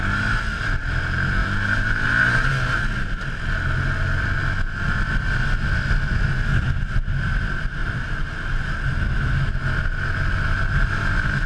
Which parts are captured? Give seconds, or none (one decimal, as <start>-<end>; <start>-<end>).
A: 0.0-1.4; 2.5-7.8; 8.3-11.5